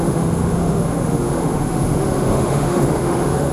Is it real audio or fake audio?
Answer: fake